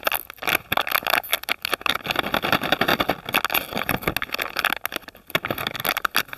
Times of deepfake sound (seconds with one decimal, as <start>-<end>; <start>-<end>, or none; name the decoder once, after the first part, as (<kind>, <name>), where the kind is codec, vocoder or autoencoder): none